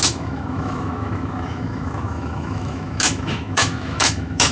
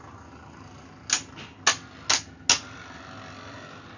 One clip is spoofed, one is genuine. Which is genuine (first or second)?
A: second